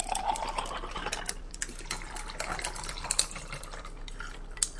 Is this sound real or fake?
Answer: fake